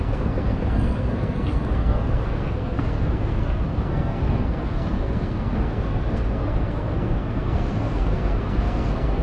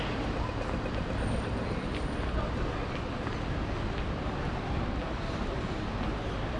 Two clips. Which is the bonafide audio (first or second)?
second